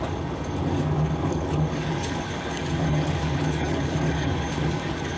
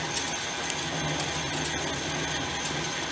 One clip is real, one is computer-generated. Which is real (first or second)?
second